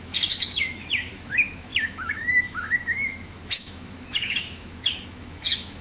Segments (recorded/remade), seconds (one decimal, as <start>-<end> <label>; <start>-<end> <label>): 0.0-5.8 remade